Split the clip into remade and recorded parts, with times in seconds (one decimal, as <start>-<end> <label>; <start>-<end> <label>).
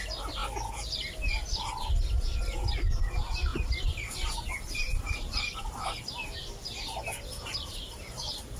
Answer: 0.0-0.4 remade; 0.4-2.7 recorded; 2.7-6.2 remade; 6.2-7.5 recorded; 7.5-8.6 remade